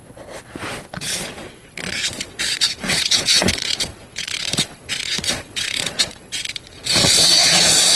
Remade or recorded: remade